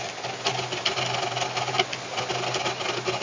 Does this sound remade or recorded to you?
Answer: recorded